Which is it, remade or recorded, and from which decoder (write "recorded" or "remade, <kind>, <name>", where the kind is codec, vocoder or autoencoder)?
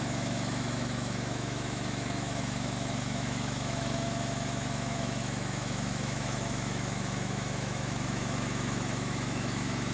remade, autoencoder, DAC-VAE